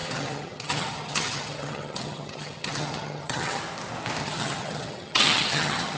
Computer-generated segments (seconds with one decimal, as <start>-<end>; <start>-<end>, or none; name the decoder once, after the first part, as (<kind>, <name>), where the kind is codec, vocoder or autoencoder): 0.0-3.6 (vocoder, HiFi-GAN); 4.2-6.0